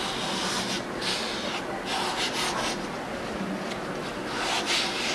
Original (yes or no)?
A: yes